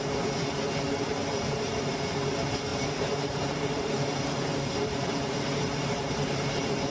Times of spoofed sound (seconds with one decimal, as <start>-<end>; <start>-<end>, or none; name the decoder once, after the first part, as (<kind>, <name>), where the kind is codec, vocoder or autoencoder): 1.2-2.0 (vocoder, BigVGAN v2); 2.7-6.9